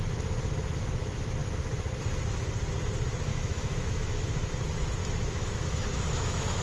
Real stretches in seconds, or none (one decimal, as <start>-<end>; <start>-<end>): 0.0-3.3; 4.5-5.0